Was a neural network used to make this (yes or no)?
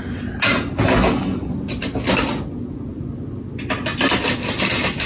no